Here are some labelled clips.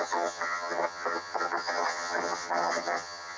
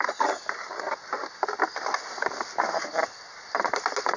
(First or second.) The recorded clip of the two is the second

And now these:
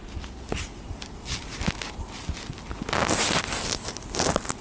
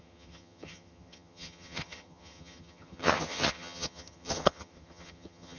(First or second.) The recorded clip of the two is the first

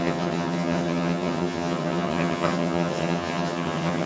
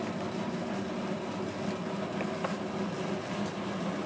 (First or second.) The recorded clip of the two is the second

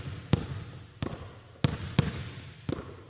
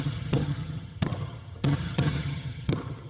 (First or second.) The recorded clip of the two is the first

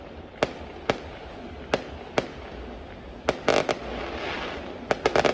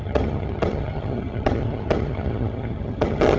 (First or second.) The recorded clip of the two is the first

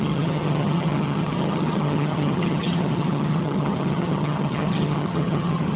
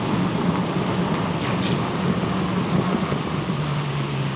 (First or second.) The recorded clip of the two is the second